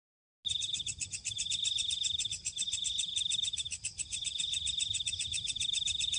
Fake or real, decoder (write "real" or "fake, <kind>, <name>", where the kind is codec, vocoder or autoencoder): real